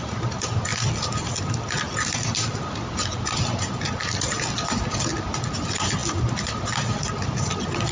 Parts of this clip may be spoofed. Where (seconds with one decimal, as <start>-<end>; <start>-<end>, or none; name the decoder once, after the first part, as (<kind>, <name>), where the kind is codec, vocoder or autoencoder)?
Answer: none